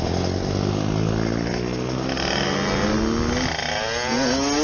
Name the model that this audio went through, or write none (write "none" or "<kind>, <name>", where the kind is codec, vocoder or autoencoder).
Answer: none